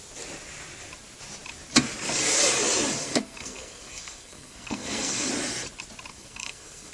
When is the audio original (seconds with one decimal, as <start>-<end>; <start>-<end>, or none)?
0.0-3.0; 5.3-6.1